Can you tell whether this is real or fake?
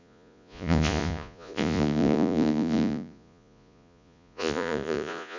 fake